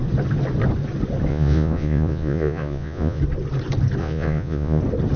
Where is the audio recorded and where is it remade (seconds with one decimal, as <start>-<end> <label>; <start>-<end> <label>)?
0.0-1.3 recorded; 1.3-3.2 remade; 3.2-4.0 recorded; 4.0-4.8 remade; 4.8-5.2 recorded